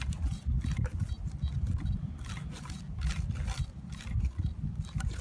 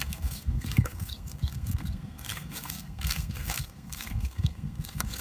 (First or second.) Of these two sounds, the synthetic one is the second